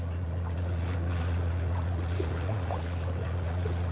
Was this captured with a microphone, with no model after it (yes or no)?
no